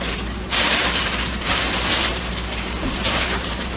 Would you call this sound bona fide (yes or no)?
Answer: no